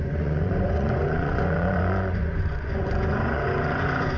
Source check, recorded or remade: remade